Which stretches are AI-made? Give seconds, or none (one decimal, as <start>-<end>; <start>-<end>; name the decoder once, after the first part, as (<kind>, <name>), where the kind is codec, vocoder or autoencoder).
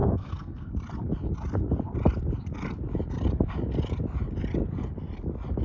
0.0-0.7 (codec, SNAC)